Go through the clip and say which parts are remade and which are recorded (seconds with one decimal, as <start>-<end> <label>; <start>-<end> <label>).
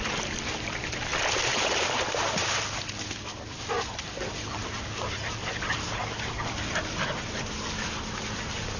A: 0.0-8.8 recorded